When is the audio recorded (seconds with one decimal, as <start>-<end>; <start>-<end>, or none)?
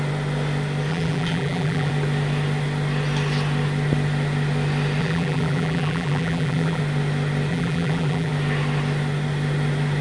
0.0-0.9; 1.9-5.0; 6.8-7.5; 8.3-10.0